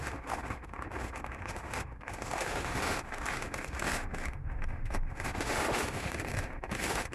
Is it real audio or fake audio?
fake